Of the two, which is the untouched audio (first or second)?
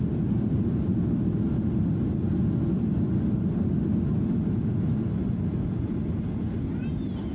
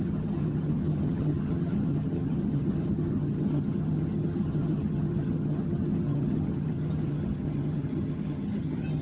first